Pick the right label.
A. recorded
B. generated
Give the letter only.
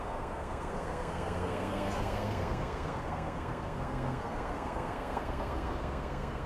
B